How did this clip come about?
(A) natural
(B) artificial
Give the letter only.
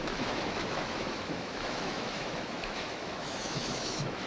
B